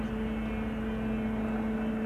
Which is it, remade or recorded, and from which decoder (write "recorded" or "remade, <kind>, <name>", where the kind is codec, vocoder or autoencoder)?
recorded